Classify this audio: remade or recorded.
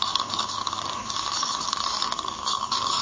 remade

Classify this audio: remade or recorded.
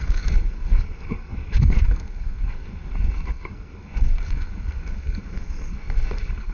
remade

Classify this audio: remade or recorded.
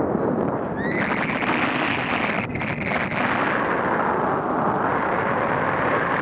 recorded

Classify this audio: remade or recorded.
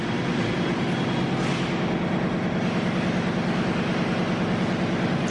recorded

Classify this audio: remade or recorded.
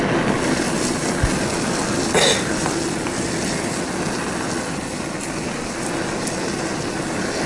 recorded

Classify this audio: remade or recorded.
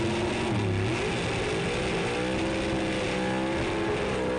recorded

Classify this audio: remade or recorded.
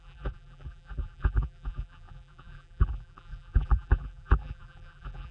remade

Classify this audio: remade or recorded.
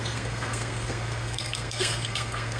remade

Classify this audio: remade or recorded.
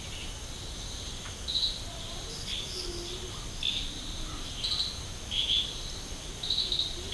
recorded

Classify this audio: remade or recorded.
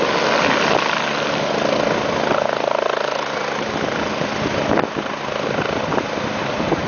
recorded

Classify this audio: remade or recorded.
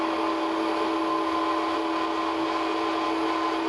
recorded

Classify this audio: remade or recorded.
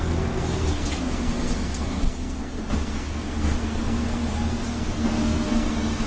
remade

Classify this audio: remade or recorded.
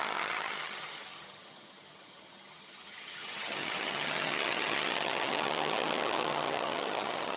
remade